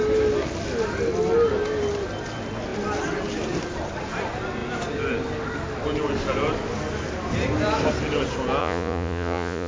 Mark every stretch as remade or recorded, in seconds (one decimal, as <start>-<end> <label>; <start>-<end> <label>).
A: 0.0-8.6 recorded; 8.6-9.7 remade